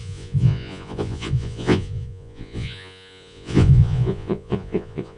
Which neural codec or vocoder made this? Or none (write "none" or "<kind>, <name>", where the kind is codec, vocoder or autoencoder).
vocoder, Vocos